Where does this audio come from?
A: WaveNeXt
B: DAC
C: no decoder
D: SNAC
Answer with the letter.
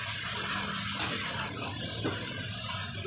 C